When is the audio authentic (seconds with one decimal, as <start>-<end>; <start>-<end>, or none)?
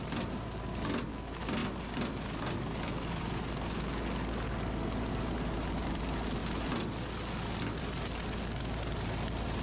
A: 0.0-9.6